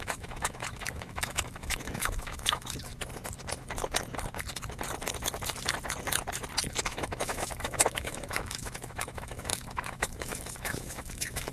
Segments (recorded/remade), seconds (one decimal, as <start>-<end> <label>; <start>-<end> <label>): 0.0-2.9 remade; 2.9-6.8 recorded; 6.8-11.5 remade